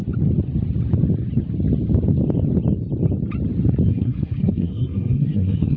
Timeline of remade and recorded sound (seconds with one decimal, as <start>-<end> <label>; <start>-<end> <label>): 0.0-3.9 recorded; 3.9-5.8 remade